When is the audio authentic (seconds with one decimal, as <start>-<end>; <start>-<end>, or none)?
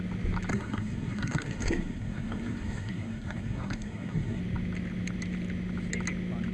0.0-0.5; 4.4-6.5